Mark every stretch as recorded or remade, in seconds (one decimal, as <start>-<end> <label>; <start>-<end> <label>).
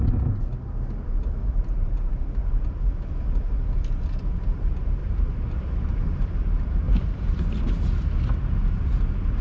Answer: 0.0-1.4 recorded; 1.4-2.4 remade; 2.4-5.0 recorded; 5.0-8.4 remade; 8.4-9.4 recorded